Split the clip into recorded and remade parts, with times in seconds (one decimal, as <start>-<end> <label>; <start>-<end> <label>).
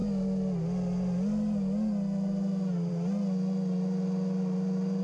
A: 0.0-5.0 recorded